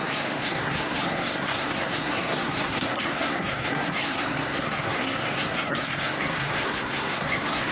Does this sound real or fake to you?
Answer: fake